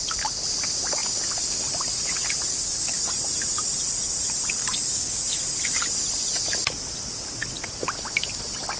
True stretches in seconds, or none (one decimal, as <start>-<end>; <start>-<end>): 0.0-2.5; 3.1-4.6; 5.2-8.8